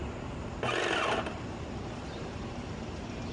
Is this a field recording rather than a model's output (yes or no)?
yes